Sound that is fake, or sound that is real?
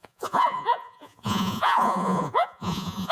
fake